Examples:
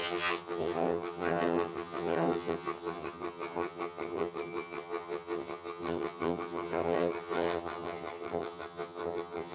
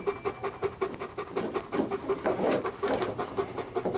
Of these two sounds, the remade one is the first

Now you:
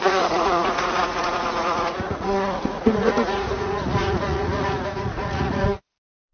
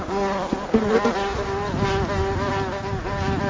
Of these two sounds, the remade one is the first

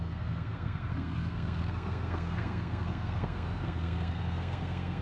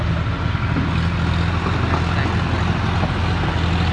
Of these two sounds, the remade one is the first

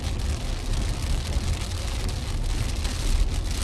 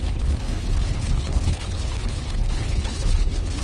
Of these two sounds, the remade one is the second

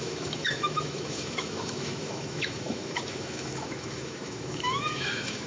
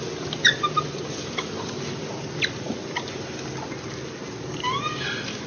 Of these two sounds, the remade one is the first